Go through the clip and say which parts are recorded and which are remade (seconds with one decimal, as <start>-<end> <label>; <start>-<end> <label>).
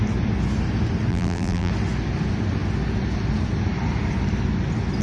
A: 0.0-1.1 recorded; 1.1-1.7 remade; 1.7-5.0 recorded